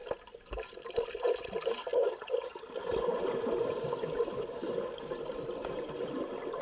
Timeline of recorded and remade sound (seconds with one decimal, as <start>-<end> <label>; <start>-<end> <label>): 0.0-6.6 recorded